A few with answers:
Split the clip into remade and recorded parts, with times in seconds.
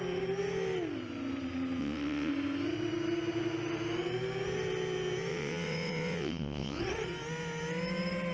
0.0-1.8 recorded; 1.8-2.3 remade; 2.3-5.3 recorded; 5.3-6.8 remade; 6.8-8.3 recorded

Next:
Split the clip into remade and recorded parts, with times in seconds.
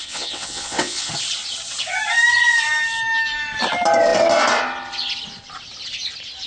0.0-1.1 remade; 1.1-6.5 recorded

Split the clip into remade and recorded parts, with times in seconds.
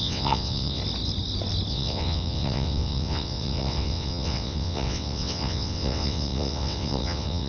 0.0-0.8 remade; 0.8-1.7 recorded; 1.7-7.5 remade